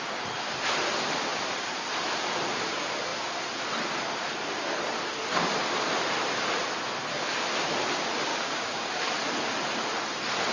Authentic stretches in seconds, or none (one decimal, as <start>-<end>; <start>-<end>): 0.0-8.3; 8.9-10.5